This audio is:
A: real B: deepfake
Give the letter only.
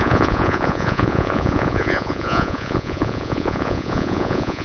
B